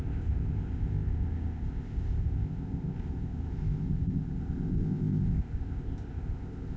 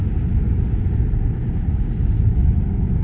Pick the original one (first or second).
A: second